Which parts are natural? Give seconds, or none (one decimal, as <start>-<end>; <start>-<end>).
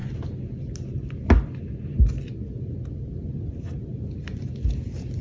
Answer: 0.0-5.2